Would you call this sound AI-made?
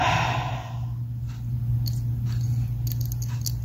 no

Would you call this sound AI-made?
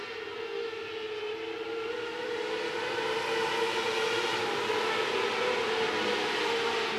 no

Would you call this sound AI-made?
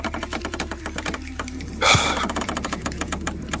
yes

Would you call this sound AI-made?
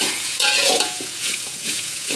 yes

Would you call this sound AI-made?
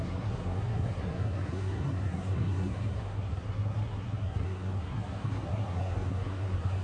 yes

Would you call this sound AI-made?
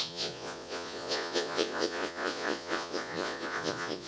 yes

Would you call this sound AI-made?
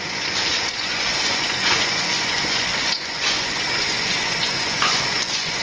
yes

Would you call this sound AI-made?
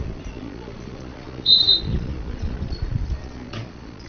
yes